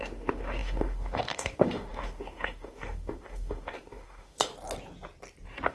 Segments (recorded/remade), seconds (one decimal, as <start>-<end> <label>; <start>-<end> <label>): 0.0-4.5 remade; 4.5-5.7 recorded